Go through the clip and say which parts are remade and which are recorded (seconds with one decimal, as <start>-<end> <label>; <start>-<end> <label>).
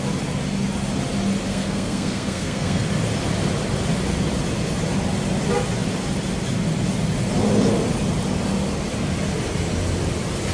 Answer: 0.0-1.5 recorded; 1.5-2.9 remade; 2.9-10.5 recorded